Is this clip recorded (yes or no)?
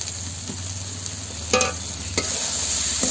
yes